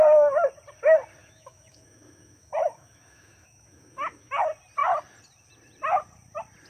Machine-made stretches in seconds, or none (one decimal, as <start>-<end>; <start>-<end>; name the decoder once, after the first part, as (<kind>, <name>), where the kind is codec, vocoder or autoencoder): 1.2-4.3 (autoencoder, DAC-VAE)